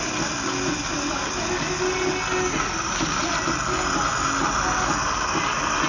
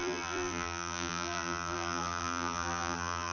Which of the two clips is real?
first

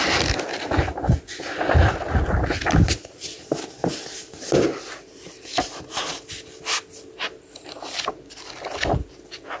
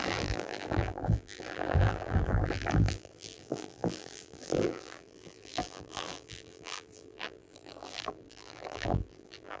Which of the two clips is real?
first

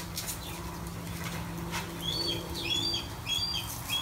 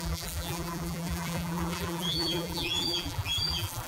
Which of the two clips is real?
first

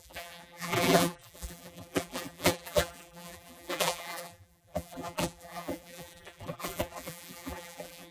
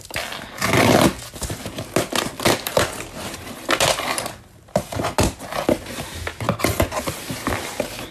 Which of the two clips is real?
second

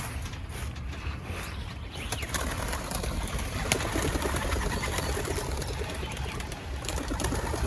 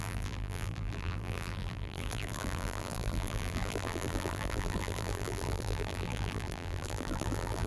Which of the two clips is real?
first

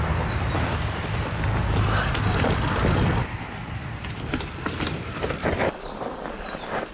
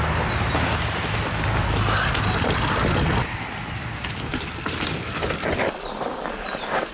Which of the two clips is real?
second